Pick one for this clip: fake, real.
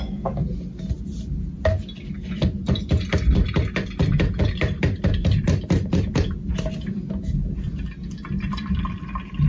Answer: real